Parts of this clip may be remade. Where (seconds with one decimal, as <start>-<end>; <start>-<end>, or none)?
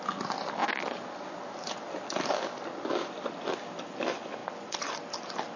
none